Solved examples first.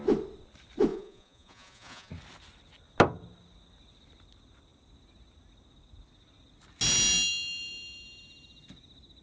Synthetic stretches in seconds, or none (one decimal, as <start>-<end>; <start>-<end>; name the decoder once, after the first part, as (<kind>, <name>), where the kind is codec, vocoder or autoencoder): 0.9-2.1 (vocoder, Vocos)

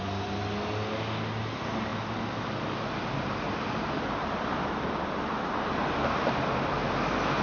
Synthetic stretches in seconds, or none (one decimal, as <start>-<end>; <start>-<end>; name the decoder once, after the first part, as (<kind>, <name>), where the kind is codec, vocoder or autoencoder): none

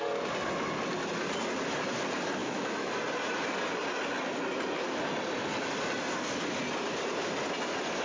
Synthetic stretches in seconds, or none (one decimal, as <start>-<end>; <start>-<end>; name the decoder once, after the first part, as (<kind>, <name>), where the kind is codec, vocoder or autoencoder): 2.4-2.9 (autoencoder, DAC-VAE)

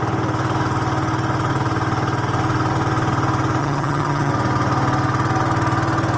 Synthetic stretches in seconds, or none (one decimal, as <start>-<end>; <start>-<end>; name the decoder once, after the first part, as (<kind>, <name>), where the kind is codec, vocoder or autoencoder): 3.6-4.3 (vocoder, HiFi-GAN)